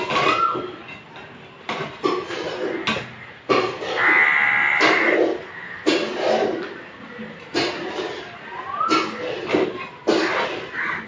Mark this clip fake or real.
real